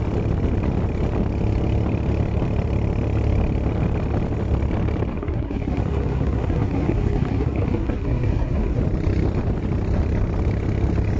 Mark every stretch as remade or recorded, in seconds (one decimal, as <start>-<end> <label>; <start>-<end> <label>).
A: 0.0-5.1 recorded; 5.1-8.8 remade; 8.8-11.2 recorded